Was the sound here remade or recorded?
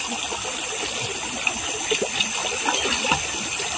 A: recorded